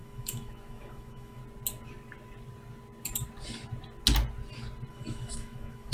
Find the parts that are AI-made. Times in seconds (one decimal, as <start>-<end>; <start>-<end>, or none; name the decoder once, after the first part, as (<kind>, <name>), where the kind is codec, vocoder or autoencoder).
0.0-1.4 (autoencoder, DAC-VAE); 4.9-5.9